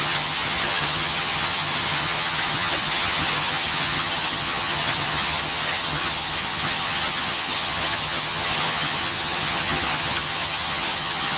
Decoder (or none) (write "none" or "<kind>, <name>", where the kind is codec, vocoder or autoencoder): vocoder, HiFi-GAN